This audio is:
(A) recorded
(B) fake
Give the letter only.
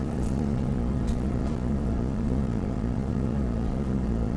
B